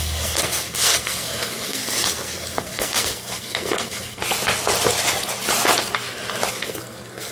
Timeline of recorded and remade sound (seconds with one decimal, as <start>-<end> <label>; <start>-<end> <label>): 0.0-4.2 remade; 4.2-6.5 recorded; 6.5-7.3 remade